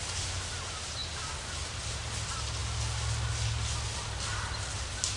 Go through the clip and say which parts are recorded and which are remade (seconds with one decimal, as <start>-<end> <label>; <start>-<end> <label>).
0.0-5.2 recorded